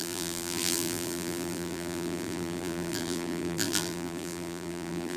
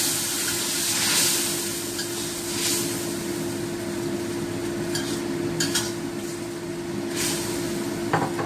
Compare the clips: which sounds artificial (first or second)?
first